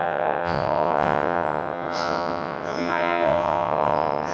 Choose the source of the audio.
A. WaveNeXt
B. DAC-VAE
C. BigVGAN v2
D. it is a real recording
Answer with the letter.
A